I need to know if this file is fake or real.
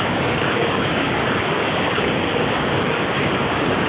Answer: fake